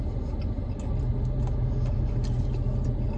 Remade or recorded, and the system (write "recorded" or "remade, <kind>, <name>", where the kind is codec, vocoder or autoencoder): recorded